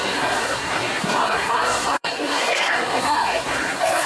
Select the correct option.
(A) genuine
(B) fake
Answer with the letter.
B